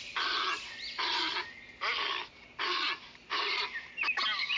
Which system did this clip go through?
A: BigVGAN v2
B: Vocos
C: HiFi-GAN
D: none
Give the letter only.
D